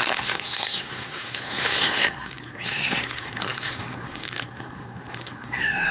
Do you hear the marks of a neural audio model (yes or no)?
yes